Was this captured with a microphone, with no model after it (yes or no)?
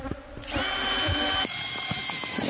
yes